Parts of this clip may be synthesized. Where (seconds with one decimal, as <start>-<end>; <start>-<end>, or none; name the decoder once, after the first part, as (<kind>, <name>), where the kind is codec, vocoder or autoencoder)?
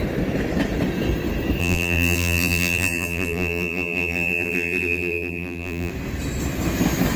1.6-5.9 (vocoder, BigVGAN v2)